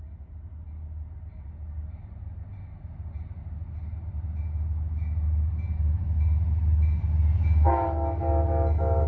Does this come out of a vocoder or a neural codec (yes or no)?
no